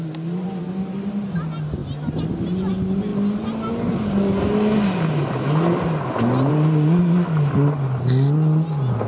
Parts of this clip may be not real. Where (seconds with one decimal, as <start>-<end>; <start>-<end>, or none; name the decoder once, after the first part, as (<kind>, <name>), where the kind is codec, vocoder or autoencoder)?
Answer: none